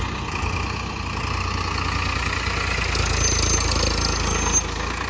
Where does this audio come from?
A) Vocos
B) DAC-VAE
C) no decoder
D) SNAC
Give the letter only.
C